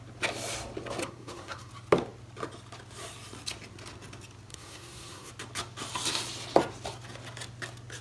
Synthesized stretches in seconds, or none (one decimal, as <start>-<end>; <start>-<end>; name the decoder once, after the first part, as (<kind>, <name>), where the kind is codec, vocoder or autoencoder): 1.0-1.7 (codec, SNAC); 4.5-5.3